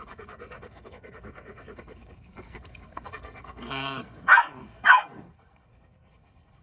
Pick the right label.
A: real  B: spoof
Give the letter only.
B